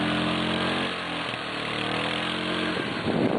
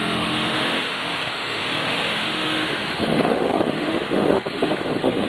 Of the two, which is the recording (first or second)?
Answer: first